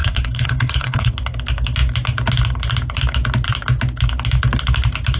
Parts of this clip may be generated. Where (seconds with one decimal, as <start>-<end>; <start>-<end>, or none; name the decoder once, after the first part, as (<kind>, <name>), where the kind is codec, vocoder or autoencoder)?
0.0-1.1 (codec, HILCodec)